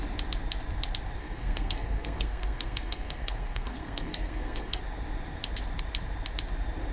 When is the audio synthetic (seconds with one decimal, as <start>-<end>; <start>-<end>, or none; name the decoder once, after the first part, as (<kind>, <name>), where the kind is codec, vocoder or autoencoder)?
1.2-4.8 (codec, SNAC)